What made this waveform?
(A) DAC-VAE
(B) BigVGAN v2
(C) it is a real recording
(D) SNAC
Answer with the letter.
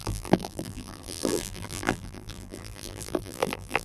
B